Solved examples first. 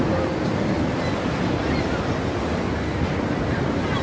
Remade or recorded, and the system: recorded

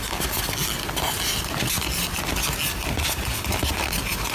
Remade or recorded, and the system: recorded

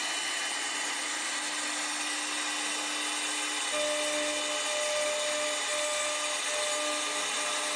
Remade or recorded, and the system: recorded